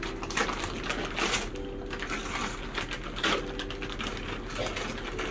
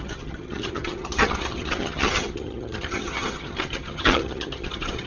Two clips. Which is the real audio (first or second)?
first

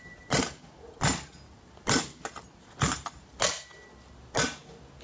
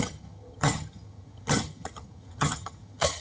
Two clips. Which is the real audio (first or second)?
first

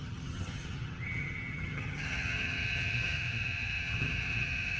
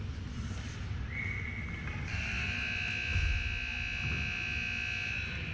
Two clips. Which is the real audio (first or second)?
second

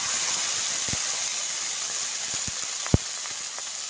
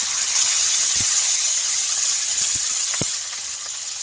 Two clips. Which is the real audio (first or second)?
first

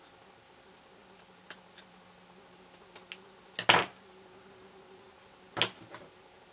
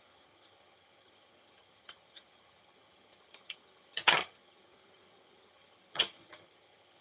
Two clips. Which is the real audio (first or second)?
first